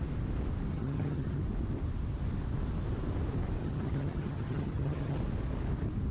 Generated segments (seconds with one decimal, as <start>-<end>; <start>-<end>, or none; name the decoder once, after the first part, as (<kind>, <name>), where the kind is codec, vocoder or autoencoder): 0.7-1.4 (vocoder, HiFi-GAN); 3.6-5.2